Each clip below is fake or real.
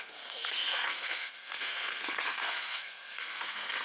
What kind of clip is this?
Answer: fake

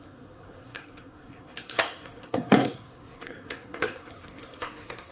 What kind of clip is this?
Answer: fake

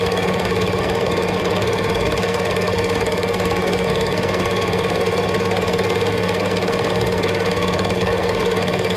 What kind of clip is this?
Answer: fake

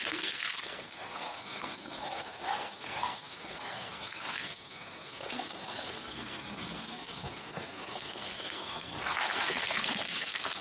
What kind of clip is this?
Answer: fake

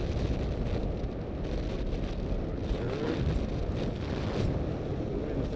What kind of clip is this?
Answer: real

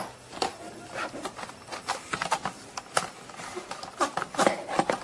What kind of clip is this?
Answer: real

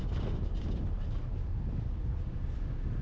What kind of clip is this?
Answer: real